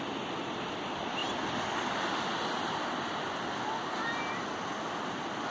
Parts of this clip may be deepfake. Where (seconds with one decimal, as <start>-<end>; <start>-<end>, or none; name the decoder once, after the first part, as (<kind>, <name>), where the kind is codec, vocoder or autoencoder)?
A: none